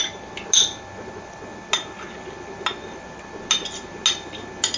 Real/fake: real